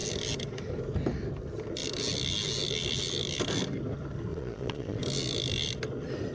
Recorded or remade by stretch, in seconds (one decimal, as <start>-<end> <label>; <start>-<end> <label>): 0.0-4.3 recorded; 4.3-5.0 remade; 5.0-6.3 recorded